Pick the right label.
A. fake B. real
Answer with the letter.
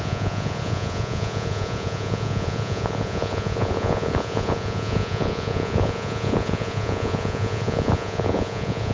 A